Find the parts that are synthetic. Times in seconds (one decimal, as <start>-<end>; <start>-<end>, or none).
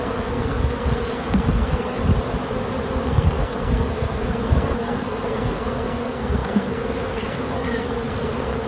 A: 0.0-2.0; 2.9-8.7